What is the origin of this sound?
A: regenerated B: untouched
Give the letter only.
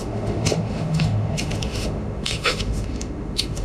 A